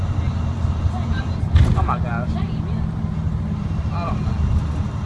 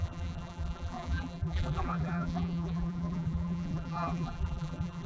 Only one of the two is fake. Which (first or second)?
second